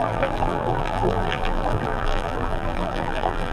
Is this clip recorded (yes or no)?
no